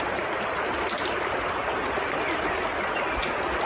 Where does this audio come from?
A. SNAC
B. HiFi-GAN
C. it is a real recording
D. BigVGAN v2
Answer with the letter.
C